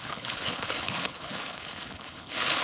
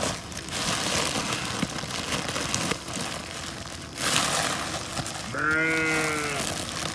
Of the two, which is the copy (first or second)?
first